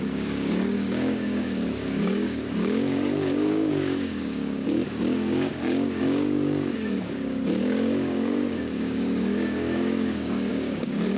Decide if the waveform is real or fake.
fake